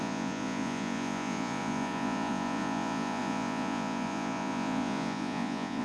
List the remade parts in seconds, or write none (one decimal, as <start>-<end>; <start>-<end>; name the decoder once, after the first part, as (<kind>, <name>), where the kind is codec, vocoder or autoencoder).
0.0-5.8 (vocoder, Vocos)